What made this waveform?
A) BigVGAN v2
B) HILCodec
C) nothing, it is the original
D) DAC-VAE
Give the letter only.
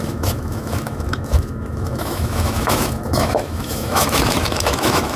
D